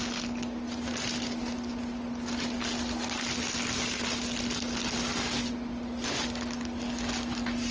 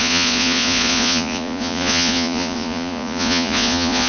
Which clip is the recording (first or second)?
first